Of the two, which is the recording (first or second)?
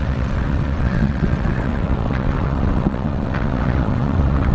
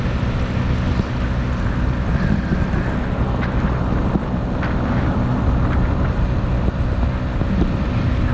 second